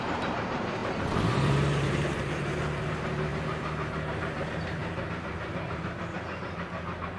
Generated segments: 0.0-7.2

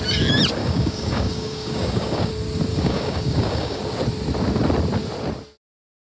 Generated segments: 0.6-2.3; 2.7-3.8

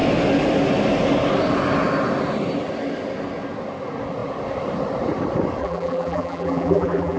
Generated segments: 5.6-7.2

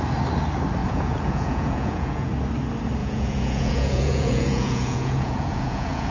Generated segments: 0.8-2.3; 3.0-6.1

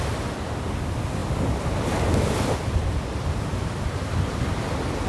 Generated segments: none

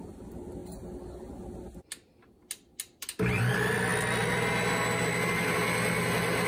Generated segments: none